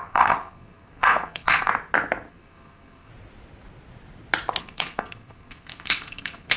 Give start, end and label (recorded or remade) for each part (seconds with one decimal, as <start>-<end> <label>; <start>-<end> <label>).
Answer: 0.0-1.7 remade; 1.7-2.3 recorded; 2.3-3.1 remade; 3.1-4.6 recorded; 4.6-6.6 remade